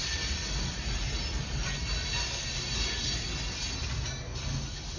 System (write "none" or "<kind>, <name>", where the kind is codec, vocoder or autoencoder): none